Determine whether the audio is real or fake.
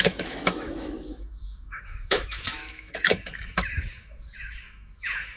fake